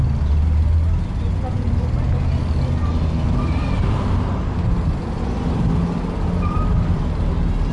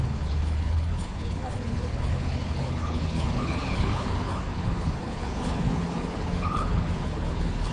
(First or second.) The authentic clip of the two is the first